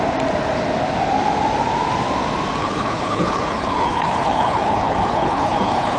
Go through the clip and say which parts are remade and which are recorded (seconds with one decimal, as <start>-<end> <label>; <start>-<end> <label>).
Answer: 0.0-2.6 recorded; 2.6-6.0 remade